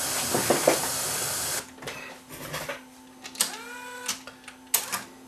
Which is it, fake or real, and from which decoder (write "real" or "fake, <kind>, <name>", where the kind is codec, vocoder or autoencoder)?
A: real